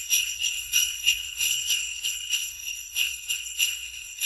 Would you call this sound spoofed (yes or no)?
yes